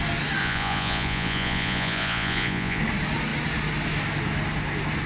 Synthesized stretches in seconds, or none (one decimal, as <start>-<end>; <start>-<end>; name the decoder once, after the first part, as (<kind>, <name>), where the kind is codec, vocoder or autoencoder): 0.4-2.8 (vocoder, Vocos)